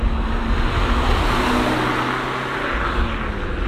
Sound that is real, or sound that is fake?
real